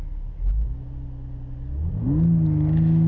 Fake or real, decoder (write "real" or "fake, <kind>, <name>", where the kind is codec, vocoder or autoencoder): real